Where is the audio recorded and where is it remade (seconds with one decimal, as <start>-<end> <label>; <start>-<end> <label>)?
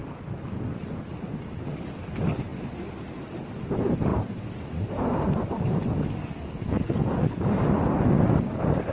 0.0-6.2 recorded; 6.2-7.3 remade; 7.3-8.9 recorded